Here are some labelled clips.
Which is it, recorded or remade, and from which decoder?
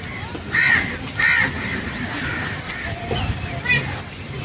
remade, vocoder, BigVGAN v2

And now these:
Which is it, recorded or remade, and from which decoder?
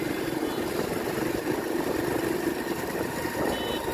recorded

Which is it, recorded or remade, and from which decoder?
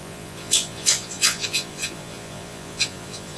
remade, vocoder, Vocos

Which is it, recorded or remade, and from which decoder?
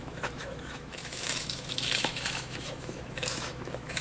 remade, autoencoder, DAC-VAE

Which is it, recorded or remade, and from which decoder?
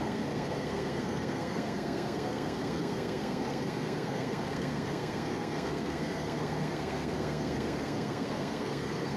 remade, codec, SNAC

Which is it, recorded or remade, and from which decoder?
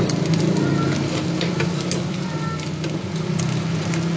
recorded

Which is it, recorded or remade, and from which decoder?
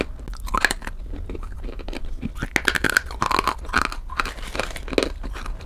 recorded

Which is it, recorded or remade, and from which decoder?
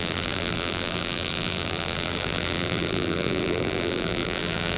remade, vocoder, BigVGAN v2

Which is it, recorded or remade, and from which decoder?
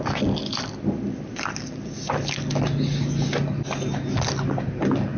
recorded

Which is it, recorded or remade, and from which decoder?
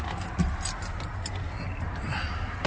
recorded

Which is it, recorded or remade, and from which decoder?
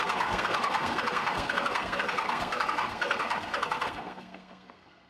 remade, codec, SNAC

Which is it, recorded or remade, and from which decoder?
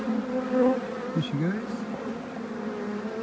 recorded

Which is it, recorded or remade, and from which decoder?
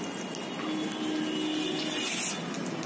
recorded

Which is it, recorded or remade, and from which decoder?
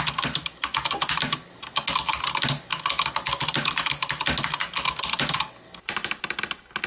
recorded